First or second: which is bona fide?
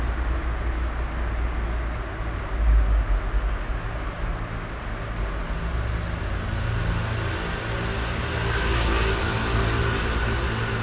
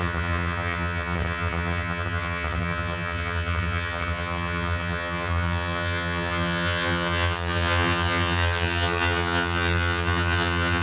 first